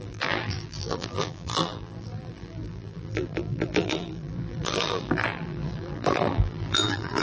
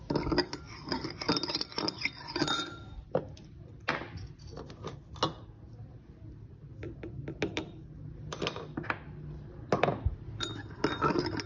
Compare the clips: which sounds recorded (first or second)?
second